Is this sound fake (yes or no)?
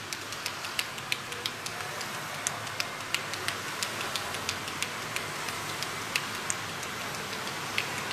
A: no